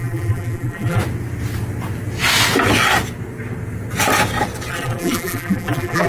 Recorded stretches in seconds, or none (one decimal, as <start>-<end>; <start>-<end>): 1.0-4.7